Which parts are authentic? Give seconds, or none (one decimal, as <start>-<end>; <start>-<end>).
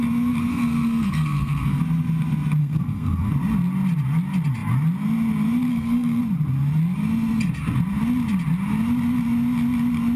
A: 0.0-0.5; 1.8-2.6; 3.3-5.7; 6.2-10.2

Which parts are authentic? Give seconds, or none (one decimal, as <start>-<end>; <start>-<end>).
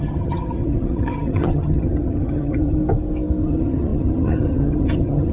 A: 2.8-3.4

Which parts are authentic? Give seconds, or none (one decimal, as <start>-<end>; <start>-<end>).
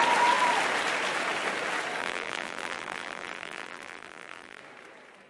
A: 0.0-2.0; 4.6-5.3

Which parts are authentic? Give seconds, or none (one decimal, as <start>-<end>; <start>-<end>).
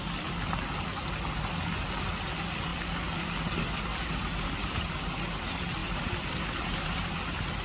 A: 0.0-3.9; 4.9-5.8; 7.1-7.6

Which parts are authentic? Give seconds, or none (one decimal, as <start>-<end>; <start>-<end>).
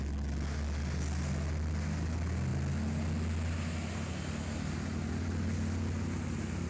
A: 0.0-6.7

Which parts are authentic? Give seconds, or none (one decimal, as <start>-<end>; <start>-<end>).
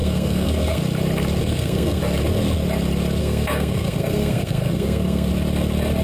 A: 0.8-1.4; 2.0-3.2; 5.3-6.0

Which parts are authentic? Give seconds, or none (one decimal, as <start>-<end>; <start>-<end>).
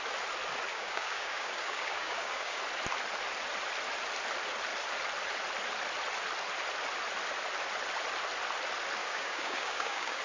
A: 0.0-0.7; 2.6-9.0